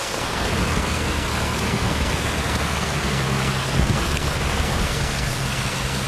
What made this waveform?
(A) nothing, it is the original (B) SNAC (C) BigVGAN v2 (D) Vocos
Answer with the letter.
B